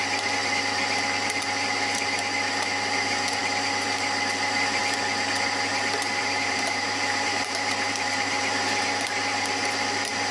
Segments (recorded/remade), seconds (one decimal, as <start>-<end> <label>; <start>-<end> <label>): 0.0-5.7 recorded; 5.7-8.8 remade; 8.8-10.3 recorded

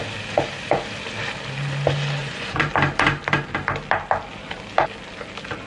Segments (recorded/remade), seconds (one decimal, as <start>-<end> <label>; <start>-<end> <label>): 0.0-2.2 recorded; 2.2-2.7 remade; 2.7-5.7 recorded

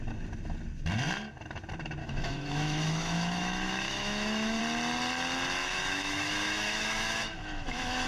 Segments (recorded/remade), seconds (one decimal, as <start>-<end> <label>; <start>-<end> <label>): 0.0-2.0 recorded; 2.0-4.6 remade; 4.6-5.6 recorded; 5.6-8.1 remade

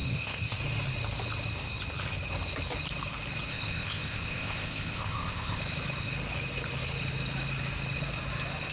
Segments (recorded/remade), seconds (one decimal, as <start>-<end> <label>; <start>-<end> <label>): 0.0-0.6 remade; 0.6-3.5 recorded; 3.5-5.6 remade; 5.6-8.7 recorded